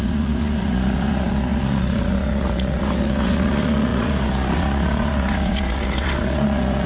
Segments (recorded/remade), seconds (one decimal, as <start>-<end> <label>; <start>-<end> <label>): 0.0-6.9 remade